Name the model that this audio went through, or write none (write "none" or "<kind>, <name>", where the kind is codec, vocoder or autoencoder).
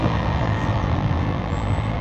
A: vocoder, BigVGAN v2